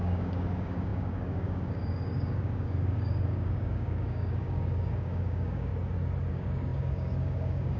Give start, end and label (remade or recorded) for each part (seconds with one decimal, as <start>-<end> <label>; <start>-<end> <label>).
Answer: 0.0-5.7 remade; 5.7-6.3 recorded; 6.3-7.8 remade